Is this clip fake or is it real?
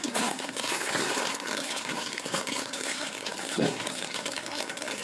fake